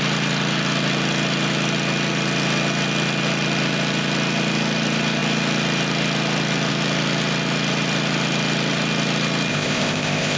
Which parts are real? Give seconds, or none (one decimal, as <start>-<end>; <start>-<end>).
0.0-9.5